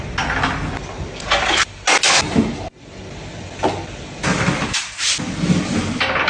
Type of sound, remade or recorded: recorded